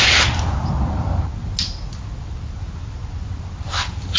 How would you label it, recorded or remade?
recorded